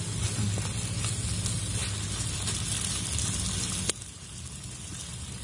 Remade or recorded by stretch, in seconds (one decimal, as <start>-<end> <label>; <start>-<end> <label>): 0.0-5.4 recorded